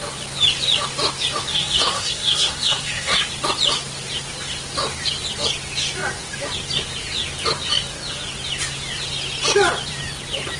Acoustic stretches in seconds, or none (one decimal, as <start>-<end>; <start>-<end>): 0.0-1.5; 3.2-10.6